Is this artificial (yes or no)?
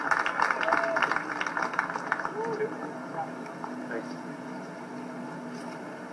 no